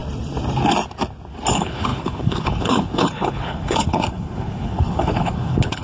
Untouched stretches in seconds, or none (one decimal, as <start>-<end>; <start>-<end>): 0.0-1.5